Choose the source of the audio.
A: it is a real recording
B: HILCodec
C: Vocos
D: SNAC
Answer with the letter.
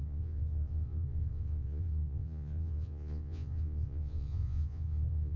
C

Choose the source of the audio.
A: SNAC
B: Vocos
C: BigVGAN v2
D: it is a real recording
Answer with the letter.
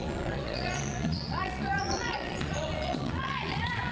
B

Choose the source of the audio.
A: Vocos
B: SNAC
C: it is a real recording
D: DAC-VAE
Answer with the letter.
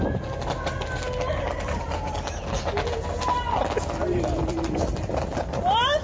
C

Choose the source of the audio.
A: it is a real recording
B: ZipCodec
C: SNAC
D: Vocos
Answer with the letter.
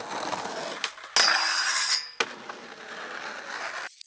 A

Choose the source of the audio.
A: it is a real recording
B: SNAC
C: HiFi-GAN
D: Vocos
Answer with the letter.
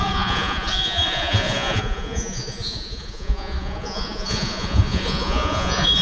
D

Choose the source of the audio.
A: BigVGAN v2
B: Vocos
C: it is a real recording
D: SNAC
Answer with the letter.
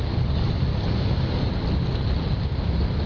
C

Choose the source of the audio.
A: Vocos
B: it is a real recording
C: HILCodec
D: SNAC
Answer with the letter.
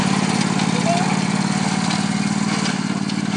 B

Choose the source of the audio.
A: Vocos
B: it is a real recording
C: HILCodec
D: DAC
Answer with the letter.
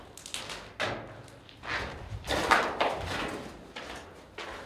B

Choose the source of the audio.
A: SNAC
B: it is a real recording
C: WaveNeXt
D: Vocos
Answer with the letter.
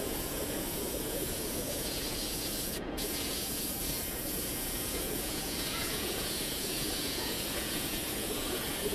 D